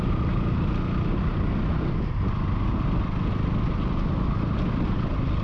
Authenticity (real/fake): real